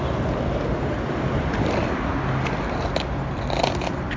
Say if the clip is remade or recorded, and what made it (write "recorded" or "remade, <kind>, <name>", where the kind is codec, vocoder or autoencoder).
recorded